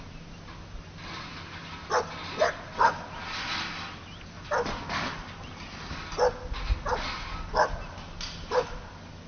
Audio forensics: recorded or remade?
recorded